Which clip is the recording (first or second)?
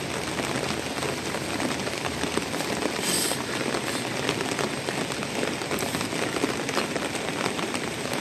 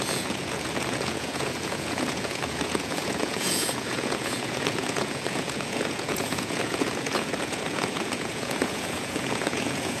first